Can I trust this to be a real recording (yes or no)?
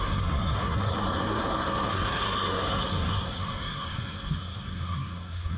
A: no